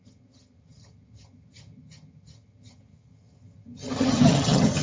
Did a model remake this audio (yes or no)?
yes